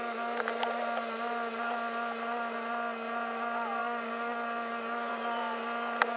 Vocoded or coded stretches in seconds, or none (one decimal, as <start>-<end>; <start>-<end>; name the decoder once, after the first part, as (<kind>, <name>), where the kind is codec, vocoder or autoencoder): 3.8-5.1 (codec, DAC)

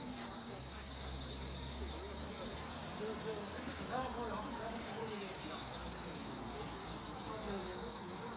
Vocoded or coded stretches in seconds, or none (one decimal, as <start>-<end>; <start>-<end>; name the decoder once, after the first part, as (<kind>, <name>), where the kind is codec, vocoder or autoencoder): 0.0-2.8 (codec, DAC); 3.3-8.4

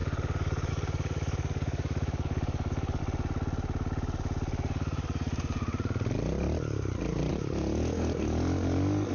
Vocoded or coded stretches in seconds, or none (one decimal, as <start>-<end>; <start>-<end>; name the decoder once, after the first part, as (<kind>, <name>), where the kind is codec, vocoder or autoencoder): 0.0-3.0 (codec, DAC); 7.3-9.1

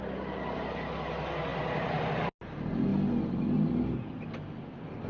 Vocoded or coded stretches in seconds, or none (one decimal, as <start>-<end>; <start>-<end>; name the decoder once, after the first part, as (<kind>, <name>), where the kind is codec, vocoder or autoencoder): none